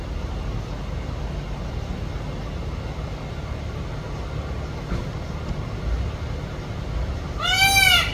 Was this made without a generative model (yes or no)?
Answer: yes